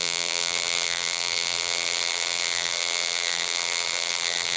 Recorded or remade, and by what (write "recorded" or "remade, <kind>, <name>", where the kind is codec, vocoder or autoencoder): remade, vocoder, BigVGAN v2